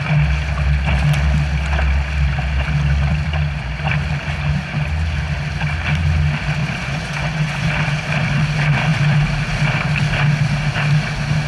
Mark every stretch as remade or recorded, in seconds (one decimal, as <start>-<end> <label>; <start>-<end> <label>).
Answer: 0.0-6.6 recorded; 6.6-7.7 remade; 7.7-11.5 recorded